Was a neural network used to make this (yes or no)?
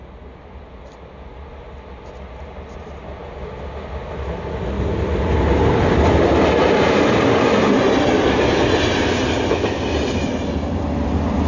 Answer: no